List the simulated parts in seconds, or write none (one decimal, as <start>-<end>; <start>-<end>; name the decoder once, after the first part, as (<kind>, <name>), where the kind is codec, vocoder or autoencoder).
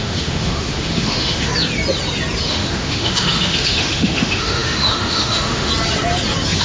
0.0-1.5 (autoencoder, DAC-VAE); 2.5-5.7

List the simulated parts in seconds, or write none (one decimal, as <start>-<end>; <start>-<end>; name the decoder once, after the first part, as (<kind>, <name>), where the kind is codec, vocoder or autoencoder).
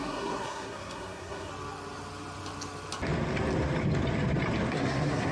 0.0-1.5 (codec, SNAC); 4.7-5.3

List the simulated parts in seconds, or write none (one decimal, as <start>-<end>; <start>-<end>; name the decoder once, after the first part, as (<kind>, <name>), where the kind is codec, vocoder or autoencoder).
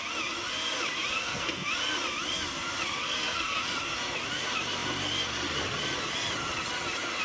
1.2-1.7 (codec, SNAC); 3.0-3.6